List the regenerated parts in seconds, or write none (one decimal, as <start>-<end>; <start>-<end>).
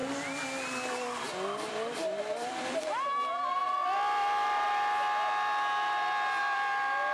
1.7-3.6; 6.4-7.1